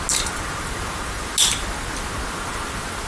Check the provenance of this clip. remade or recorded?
recorded